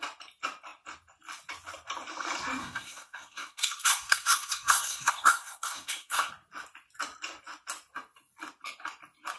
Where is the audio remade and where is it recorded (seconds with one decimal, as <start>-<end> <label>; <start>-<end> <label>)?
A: 0.0-2.6 recorded; 2.6-6.3 remade; 6.3-9.4 recorded